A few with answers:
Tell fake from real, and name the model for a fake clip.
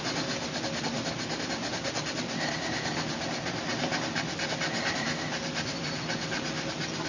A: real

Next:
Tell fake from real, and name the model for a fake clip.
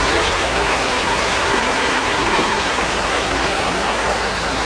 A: fake, codec, SNAC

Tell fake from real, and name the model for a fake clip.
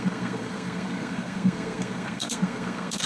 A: fake, codec, SNAC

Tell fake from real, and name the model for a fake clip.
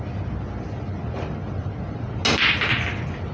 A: real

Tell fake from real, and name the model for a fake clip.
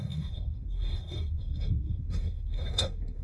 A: fake, codec, SNAC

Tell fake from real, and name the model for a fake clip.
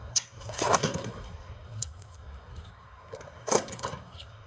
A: fake, codec, SNAC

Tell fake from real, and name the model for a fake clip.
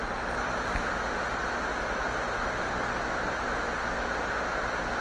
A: real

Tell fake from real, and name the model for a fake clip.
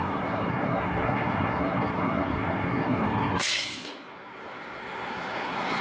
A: fake, codec, SNAC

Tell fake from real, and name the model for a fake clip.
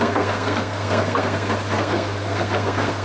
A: fake, codec, SNAC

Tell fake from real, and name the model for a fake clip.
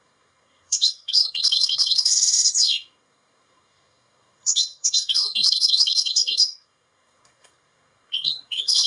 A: fake, codec, SNAC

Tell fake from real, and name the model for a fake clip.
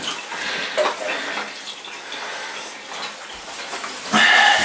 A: real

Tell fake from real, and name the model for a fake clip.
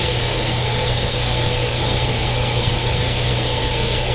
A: fake, codec, SNAC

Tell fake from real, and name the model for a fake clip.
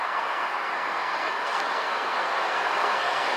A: fake, codec, SNAC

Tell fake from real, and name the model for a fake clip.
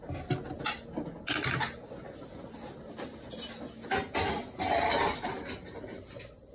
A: real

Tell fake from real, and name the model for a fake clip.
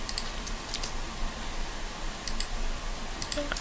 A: real